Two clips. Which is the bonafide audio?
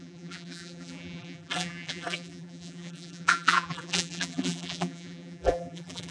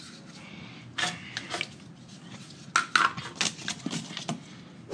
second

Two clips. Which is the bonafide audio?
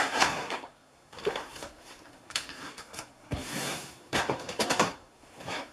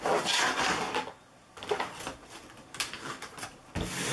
second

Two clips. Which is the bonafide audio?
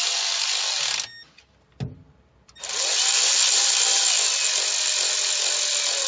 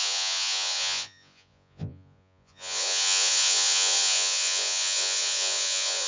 first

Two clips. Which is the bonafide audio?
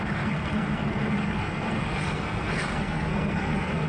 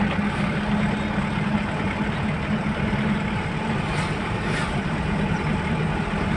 second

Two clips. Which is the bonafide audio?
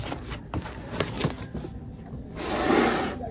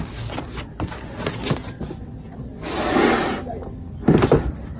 second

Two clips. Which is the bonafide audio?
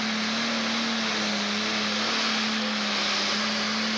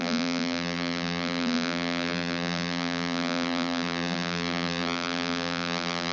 first